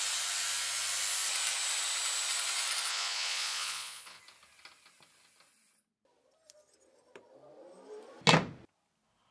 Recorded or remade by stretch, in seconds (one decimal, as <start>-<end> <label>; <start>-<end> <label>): 0.0-2.9 recorded; 2.9-4.2 remade; 4.2-9.3 recorded